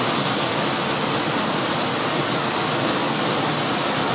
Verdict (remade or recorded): recorded